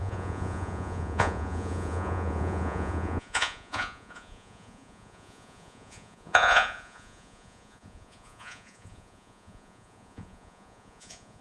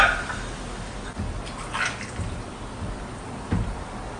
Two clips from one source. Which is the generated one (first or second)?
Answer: first